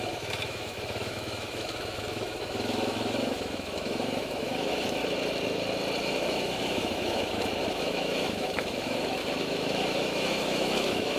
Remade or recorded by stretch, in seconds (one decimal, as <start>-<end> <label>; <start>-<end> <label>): 0.0-5.0 remade; 5.0-6.0 recorded; 6.0-11.2 remade